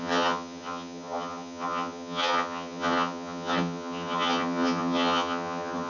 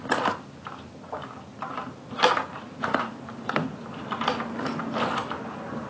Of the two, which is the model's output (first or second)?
first